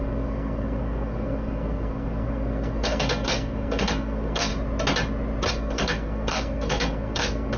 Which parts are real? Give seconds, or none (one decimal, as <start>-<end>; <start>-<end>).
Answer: 4.5-5.5